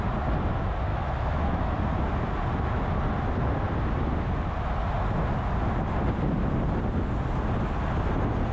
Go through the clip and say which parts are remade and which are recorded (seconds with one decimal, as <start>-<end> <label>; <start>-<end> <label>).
0.0-0.9 recorded; 0.9-1.8 remade; 1.8-8.5 recorded